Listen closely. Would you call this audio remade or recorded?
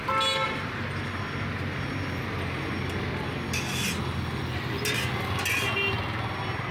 recorded